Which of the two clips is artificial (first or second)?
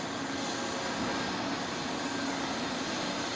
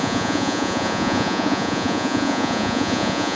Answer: second